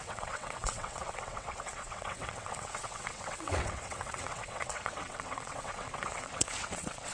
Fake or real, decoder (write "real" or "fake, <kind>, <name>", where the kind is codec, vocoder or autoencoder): fake, vocoder, WaveNeXt